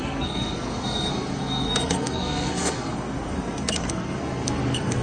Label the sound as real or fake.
fake